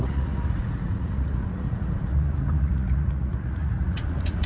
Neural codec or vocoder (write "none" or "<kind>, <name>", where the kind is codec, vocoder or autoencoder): vocoder, Vocos